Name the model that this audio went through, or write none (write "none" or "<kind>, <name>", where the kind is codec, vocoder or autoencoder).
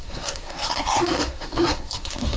codec, SNAC